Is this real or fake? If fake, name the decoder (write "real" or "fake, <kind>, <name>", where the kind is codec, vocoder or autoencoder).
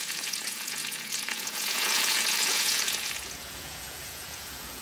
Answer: fake, vocoder, Vocos